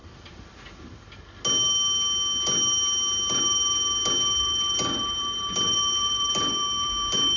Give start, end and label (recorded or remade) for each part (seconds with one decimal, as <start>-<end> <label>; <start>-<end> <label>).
0.0-4.4 recorded; 4.4-7.4 remade